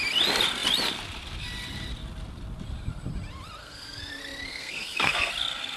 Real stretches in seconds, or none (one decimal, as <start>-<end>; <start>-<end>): 0.0-3.6; 4.1-4.5; 5.3-5.8